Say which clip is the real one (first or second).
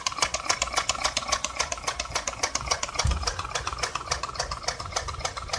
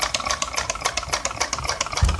second